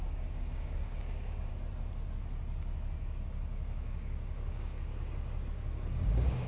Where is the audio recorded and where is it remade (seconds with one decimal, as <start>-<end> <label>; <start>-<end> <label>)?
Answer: 0.0-1.5 remade; 1.5-3.0 recorded; 3.0-4.9 remade; 4.9-5.5 recorded; 5.5-6.5 remade